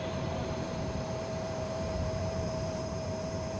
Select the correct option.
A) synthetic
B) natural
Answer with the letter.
A